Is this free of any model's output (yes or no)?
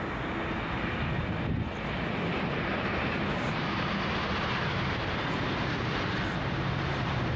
yes